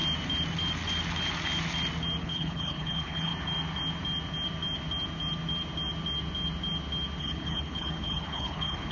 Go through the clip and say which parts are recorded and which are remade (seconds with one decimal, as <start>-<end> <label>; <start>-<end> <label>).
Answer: 0.0-2.2 recorded; 2.2-3.3 remade; 3.3-7.2 recorded; 7.2-8.9 remade